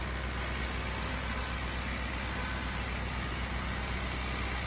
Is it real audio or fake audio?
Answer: real